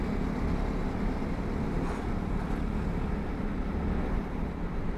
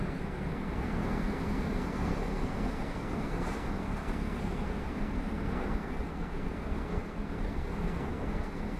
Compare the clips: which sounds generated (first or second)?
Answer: second